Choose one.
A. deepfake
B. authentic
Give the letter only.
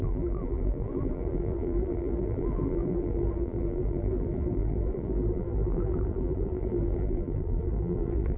A